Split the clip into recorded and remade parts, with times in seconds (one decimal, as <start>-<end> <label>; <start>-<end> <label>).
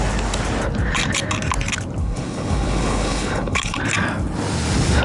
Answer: 0.0-2.0 recorded; 2.0-3.8 remade; 3.8-5.0 recorded